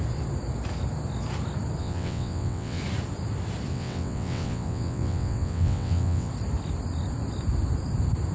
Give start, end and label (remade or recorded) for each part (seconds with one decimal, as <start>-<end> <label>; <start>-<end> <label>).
0.0-1.8 recorded; 1.8-2.8 remade; 2.8-3.7 recorded; 3.7-6.3 remade; 6.3-8.3 recorded